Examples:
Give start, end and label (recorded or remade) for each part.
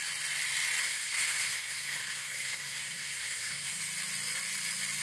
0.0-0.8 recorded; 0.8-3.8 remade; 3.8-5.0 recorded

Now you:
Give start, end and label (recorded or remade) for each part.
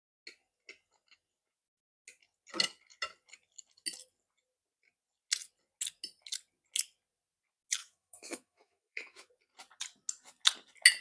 0.0-7.8 recorded; 7.8-9.3 remade; 9.3-11.0 recorded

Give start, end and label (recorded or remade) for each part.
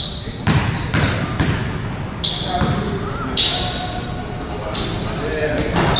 0.0-6.0 recorded